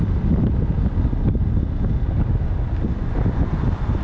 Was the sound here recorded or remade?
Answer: recorded